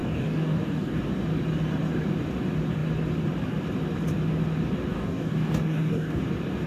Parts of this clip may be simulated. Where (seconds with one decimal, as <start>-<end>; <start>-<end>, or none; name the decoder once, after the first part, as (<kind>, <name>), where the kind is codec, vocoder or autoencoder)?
0.0-1.0 (codec, DAC); 4.9-6.2